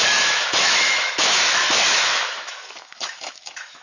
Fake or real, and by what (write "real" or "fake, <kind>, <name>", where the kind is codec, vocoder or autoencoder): fake, autoencoder, DAC-VAE